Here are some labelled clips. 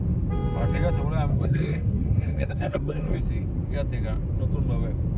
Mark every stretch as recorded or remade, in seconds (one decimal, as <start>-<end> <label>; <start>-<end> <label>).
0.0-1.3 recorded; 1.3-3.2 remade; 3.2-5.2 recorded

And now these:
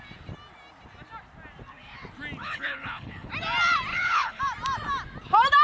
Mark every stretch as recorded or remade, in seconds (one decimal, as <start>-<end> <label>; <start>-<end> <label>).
0.0-2.4 recorded; 2.4-3.3 remade; 3.3-3.9 recorded; 3.9-4.4 remade; 4.4-5.6 recorded

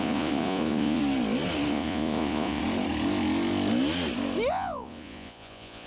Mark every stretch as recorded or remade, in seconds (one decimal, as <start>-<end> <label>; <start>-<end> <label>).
0.0-1.0 remade; 1.0-1.7 recorded; 1.7-2.6 remade; 2.6-4.5 recorded; 4.5-5.9 remade

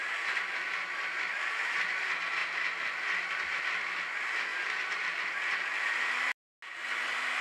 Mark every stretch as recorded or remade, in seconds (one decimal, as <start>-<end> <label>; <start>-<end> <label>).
0.0-7.4 recorded

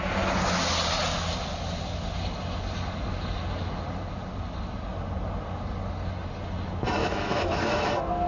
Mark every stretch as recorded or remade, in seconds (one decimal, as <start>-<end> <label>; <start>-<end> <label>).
0.0-7.0 recorded; 7.0-7.9 remade; 7.9-8.3 recorded

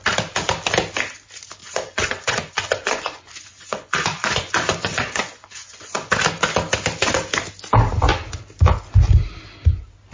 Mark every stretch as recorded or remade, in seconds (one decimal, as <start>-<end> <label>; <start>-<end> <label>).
0.0-1.6 recorded; 1.6-6.1 remade; 6.1-10.1 recorded